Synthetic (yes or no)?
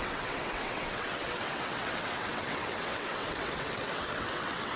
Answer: yes